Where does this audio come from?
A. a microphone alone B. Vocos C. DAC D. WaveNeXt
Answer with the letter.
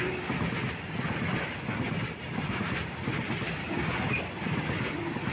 A